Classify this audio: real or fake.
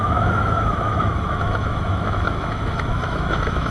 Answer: fake